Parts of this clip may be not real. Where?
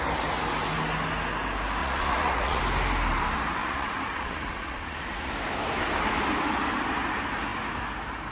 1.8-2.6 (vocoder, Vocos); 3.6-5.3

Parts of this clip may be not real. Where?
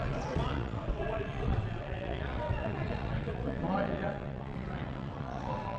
0.0-5.8 (vocoder, WaveNeXt)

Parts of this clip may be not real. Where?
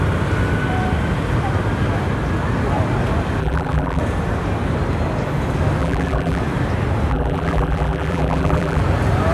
3.4-4.0 (vocoder, BigVGAN v2); 5.8-6.4; 7.1-8.8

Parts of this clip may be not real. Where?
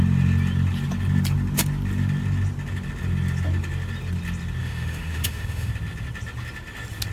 4.6-5.7 (autoencoder, DAC-VAE)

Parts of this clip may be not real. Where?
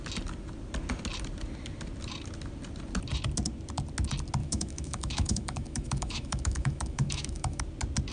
4.4-7.6 (autoencoder, DAC-VAE)